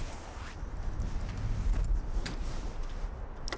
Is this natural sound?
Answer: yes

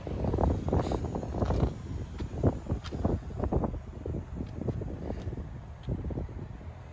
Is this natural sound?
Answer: yes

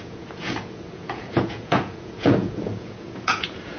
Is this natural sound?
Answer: no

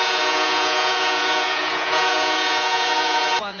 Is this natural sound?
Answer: no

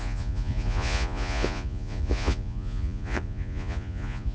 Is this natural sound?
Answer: no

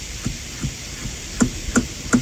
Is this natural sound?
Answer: yes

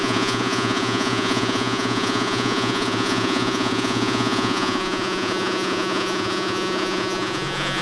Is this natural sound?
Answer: no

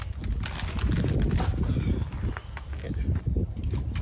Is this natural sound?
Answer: yes